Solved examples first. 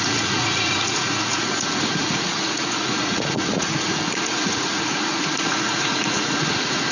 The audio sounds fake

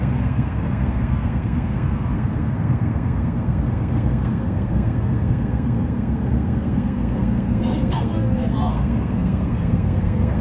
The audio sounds fake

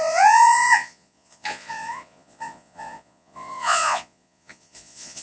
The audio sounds fake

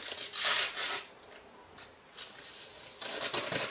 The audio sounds real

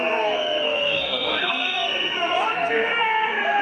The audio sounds fake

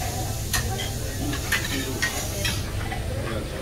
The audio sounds real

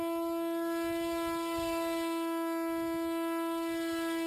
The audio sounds real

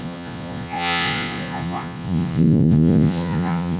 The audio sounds fake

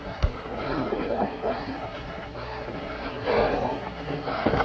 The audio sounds fake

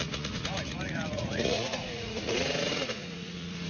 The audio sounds fake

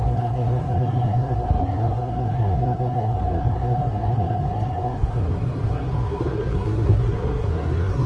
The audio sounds fake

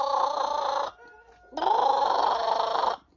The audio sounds real